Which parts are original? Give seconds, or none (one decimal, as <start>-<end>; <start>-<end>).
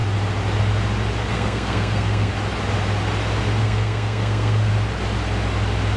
0.0-1.3; 2.3-3.6; 4.7-6.0